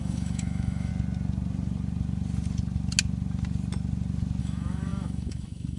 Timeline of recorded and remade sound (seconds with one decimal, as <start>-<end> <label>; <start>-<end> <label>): 0.0-0.9 remade; 0.9-4.4 recorded; 4.4-5.8 remade